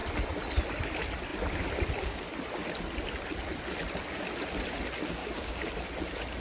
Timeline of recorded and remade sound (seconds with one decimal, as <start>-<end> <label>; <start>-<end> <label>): 0.0-5.2 recorded; 5.2-5.7 remade; 5.7-6.4 recorded